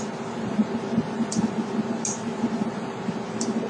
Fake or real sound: real